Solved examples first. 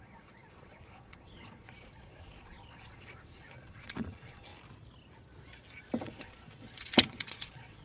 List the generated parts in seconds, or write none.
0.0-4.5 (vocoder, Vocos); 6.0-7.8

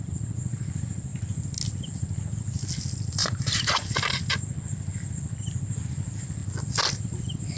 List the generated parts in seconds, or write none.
3.2-3.9 (vocoder, BigVGAN v2)

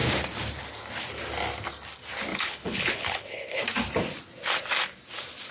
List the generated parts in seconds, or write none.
2.3-3.6 (codec, HILCodec)

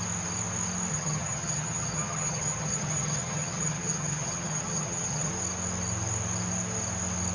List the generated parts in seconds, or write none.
0.9-5.3 (vocoder, HiFi-GAN)

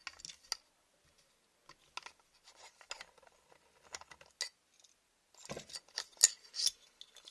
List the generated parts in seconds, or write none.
none

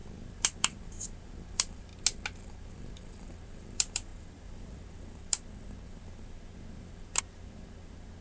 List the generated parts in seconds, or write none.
0.0-1.9 (vocoder, BigVGAN v2); 2.5-8.2

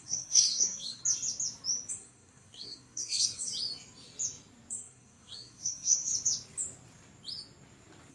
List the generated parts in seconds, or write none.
0.0-1.0 (codec, SNAC); 1.9-3.5; 4.7-6.1

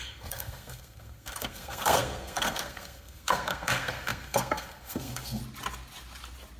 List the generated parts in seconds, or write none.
0.0-5.4 (codec, SNAC)